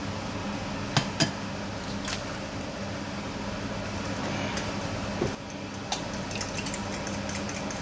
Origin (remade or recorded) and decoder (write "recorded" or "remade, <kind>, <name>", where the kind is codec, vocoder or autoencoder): recorded